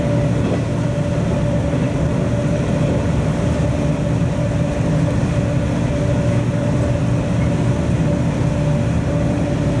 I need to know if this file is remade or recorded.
recorded